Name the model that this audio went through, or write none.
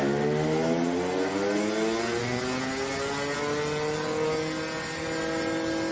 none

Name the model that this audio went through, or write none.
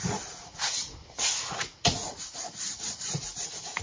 vocoder, Vocos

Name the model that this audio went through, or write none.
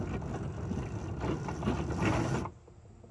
none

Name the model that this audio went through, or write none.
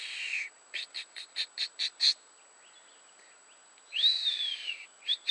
none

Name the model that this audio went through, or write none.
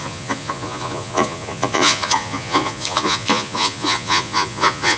vocoder, Vocos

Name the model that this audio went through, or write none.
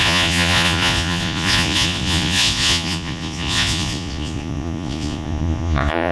vocoder, Vocos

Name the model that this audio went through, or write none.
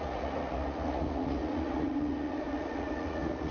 vocoder, Vocos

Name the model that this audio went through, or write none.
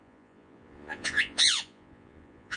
vocoder, Vocos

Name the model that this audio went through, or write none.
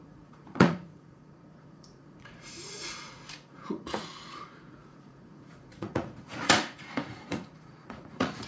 vocoder, Vocos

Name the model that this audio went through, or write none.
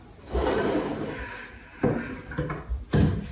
none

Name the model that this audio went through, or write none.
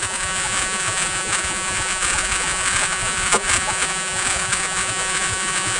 vocoder, Vocos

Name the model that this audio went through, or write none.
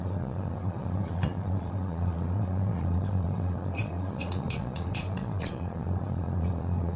vocoder, Vocos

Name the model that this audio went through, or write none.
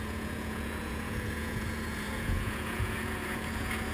vocoder, Vocos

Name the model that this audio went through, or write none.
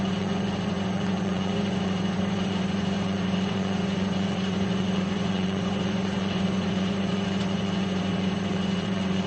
vocoder, Vocos